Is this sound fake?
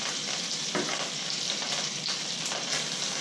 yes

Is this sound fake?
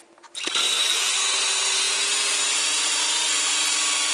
no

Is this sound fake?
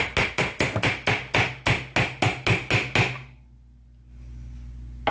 no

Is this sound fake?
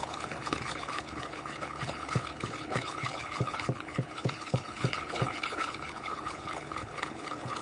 yes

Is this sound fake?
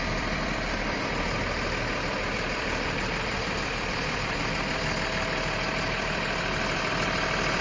yes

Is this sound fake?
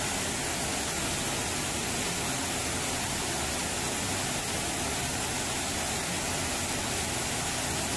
no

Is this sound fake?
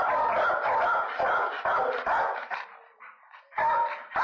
no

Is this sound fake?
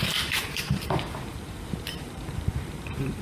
yes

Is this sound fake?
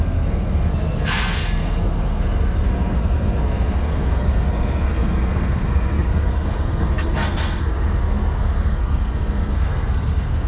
yes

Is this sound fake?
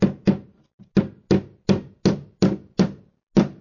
no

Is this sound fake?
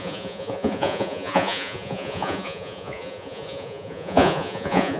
yes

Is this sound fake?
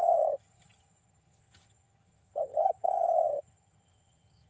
yes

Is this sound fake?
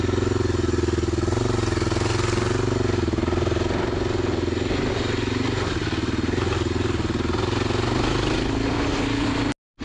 no